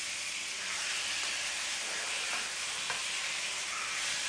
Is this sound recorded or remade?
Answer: recorded